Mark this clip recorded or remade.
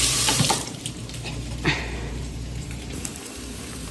remade